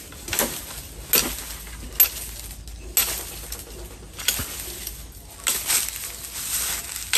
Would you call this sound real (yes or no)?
yes